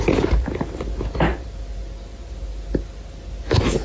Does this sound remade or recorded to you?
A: recorded